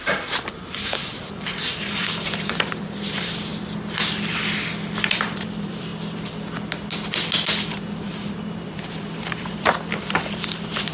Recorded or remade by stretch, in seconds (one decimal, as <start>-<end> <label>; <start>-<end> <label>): 0.0-3.5 remade; 3.5-5.1 recorded; 5.1-5.9 remade; 5.9-7.7 recorded; 7.7-10.9 remade